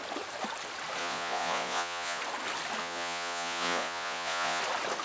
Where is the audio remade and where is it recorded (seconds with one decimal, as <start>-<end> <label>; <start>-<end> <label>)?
0.0-1.0 recorded; 1.0-2.2 remade; 2.2-2.8 recorded; 2.8-4.6 remade; 4.6-5.0 recorded